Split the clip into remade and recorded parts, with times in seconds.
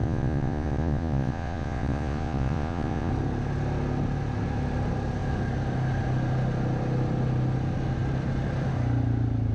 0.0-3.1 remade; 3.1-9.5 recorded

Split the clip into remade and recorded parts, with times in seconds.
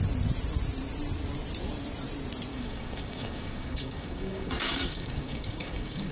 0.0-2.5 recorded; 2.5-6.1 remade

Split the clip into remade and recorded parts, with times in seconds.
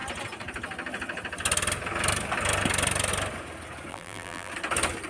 0.0-3.9 recorded; 3.9-4.5 remade; 4.5-5.1 recorded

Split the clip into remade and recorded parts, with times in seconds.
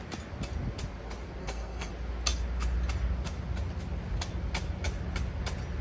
0.0-1.4 recorded; 1.4-1.9 remade; 1.9-5.8 recorded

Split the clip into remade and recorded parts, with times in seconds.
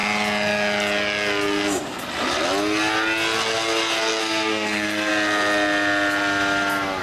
0.0-4.2 recorded; 4.2-5.1 remade; 5.1-7.0 recorded